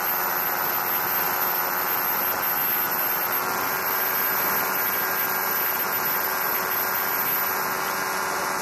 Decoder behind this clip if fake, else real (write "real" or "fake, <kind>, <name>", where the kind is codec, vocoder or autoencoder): real